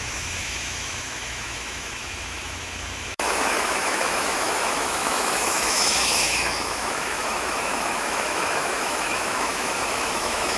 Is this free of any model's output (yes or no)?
no